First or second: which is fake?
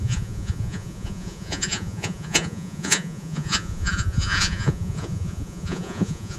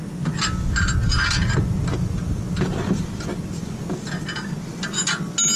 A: first